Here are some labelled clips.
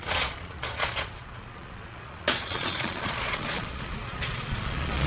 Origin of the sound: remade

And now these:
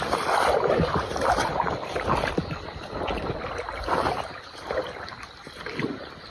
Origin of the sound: recorded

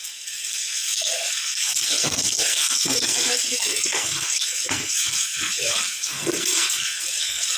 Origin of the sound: remade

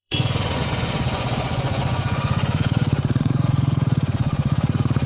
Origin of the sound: remade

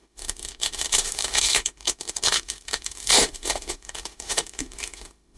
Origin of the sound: remade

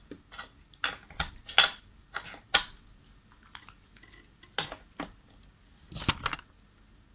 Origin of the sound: recorded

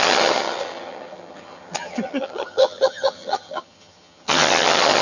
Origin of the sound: remade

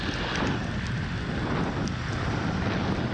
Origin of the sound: recorded